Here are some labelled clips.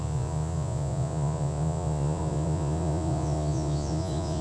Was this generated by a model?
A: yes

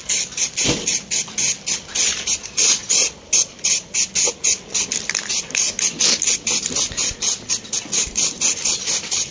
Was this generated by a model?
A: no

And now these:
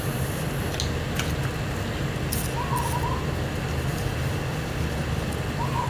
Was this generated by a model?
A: no